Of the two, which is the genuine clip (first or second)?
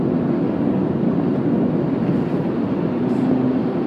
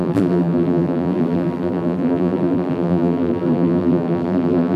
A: first